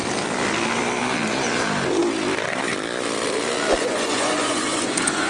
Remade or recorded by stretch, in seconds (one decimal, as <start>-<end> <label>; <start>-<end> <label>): 0.0-3.8 recorded; 3.8-5.3 remade